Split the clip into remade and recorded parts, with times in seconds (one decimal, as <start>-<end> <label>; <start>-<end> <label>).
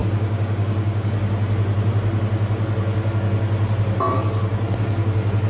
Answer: 0.0-1.1 remade; 1.1-5.5 recorded